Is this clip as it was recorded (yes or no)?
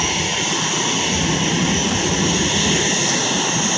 yes